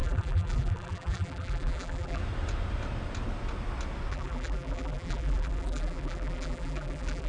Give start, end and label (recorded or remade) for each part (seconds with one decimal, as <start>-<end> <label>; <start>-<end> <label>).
0.0-2.2 remade; 2.2-4.1 recorded; 4.1-7.3 remade

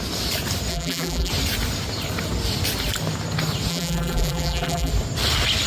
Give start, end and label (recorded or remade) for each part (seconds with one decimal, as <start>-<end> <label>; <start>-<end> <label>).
0.0-0.7 recorded; 0.7-1.3 remade; 1.3-3.7 recorded; 3.7-4.9 remade; 4.9-5.7 recorded